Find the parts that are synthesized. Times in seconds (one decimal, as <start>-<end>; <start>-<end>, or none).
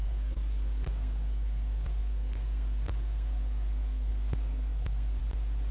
0.0-5.2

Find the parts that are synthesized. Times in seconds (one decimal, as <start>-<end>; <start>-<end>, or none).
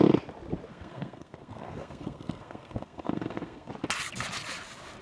0.7-3.7